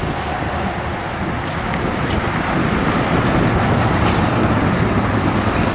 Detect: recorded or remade recorded